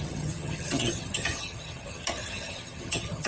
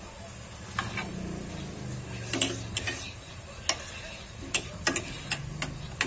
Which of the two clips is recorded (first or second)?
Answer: second